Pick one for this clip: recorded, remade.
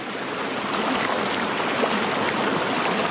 recorded